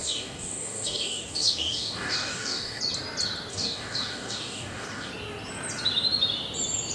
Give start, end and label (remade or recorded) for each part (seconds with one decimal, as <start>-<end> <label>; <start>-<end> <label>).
0.0-2.8 remade; 2.8-3.5 recorded; 3.5-5.1 remade; 5.1-6.9 recorded